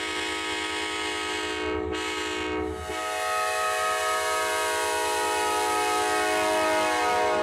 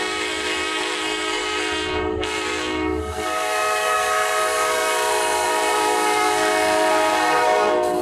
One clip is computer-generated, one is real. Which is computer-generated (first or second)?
second